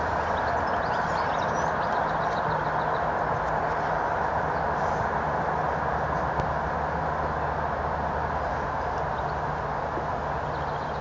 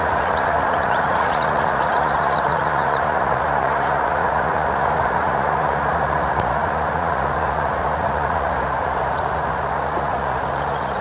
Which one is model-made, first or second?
second